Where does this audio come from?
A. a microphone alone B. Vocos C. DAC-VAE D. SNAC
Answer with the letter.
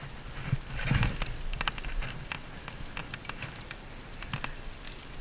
A